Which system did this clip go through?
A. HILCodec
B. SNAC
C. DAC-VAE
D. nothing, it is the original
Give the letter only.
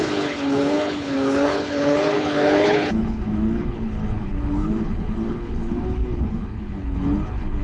A